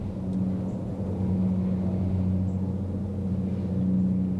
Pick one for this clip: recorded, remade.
recorded